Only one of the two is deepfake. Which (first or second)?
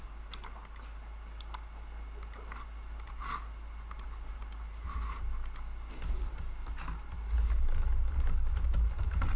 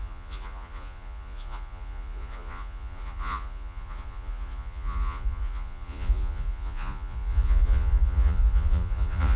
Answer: second